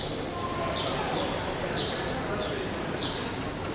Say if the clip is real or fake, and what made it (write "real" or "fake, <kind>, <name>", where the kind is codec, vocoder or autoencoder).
real